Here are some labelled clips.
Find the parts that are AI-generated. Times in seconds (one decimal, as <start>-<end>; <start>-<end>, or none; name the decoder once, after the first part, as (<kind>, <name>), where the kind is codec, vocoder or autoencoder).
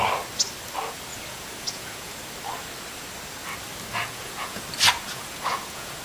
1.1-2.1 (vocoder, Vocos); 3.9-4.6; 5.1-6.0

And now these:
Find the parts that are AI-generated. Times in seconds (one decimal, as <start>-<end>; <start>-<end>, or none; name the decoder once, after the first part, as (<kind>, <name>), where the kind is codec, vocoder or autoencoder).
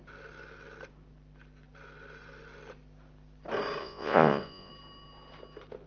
3.8-4.7 (vocoder, Vocos)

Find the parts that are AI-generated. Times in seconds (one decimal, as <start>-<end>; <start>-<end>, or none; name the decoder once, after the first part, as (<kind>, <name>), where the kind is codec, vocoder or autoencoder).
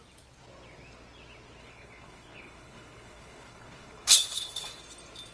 1.6-4.8 (codec, HILCodec)